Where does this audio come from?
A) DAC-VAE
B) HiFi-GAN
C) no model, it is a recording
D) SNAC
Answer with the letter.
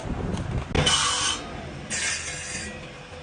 C